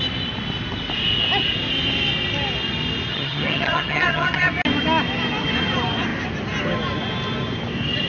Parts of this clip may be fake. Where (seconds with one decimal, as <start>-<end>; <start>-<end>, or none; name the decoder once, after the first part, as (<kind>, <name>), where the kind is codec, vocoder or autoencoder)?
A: 3.1-4.5 (vocoder, HiFi-GAN)

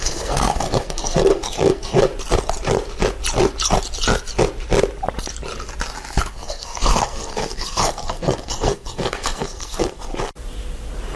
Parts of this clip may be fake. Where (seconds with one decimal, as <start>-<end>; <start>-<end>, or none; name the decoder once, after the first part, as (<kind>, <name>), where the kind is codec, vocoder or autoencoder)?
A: 0.0-2.1 (codec, SNAC); 6.3-10.1

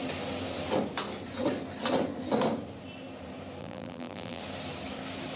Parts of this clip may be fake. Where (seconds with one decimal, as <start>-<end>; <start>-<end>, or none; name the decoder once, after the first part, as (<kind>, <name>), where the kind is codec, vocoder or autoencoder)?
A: 3.6-4.4 (vocoder, BigVGAN v2)